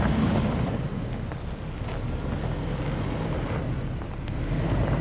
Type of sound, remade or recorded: recorded